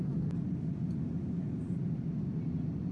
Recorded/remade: recorded